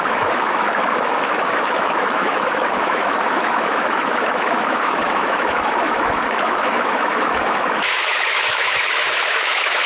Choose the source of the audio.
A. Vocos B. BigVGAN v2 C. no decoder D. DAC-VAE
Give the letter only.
D